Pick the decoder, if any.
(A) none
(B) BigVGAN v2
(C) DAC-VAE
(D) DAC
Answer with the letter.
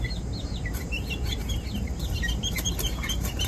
B